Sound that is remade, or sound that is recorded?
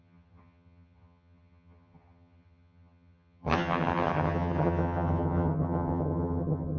remade